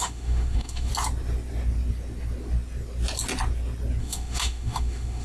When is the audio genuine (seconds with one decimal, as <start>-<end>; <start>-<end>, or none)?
0.9-4.0